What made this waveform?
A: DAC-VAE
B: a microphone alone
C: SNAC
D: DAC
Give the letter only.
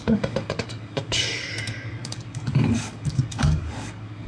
D